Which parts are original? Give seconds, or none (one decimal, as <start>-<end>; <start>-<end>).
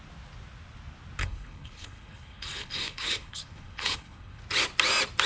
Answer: 0.0-1.2; 4.4-5.3